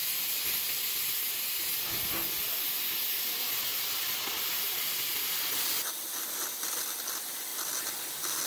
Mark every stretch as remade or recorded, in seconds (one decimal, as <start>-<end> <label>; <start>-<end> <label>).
0.0-8.5 recorded